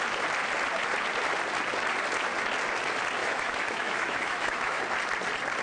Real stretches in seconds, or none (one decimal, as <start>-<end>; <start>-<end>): 0.0-3.2; 4.8-5.6